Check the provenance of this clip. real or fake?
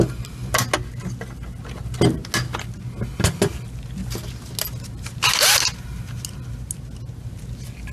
real